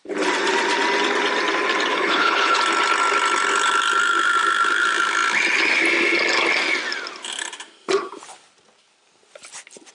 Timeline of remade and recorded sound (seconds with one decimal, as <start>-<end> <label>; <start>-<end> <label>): 0.0-1.9 recorded; 1.9-2.6 remade; 2.6-9.9 recorded